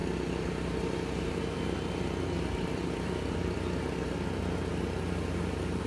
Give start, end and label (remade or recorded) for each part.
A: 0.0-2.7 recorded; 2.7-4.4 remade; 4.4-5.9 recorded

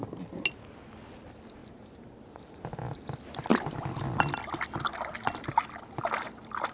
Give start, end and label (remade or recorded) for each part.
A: 0.0-1.6 recorded; 1.6-2.5 remade; 2.5-6.7 recorded